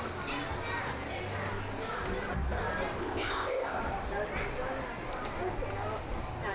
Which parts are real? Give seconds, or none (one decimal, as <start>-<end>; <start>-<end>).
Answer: 0.0-3.0; 3.8-6.5